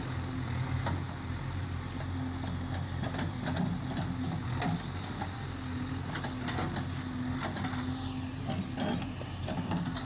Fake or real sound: real